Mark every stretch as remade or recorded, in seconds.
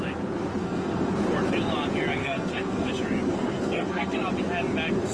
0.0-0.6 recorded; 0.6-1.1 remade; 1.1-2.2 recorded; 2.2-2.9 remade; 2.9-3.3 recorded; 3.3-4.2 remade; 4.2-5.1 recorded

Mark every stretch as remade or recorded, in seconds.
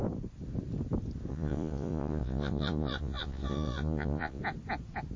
0.0-1.3 recorded; 1.3-4.4 remade; 4.4-5.2 recorded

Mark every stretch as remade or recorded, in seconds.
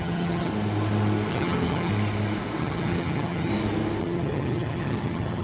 0.0-0.5 remade; 0.5-1.3 recorded; 1.3-1.9 remade; 1.9-2.6 recorded; 2.6-3.5 remade; 3.5-4.0 recorded; 4.0-5.4 remade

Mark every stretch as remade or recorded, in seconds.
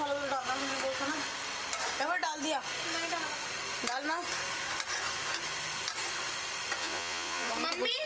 0.0-6.8 recorded; 6.8-7.5 remade; 7.5-8.1 recorded